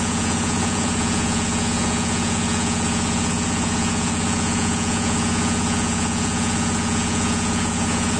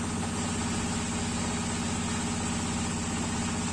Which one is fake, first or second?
first